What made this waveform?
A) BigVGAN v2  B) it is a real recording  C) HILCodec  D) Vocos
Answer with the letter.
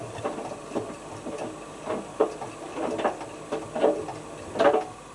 B